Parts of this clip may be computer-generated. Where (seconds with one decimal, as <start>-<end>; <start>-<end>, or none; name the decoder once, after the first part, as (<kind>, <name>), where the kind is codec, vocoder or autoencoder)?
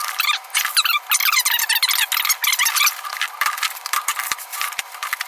none